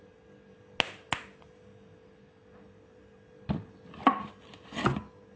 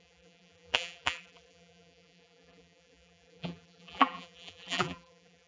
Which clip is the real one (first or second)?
first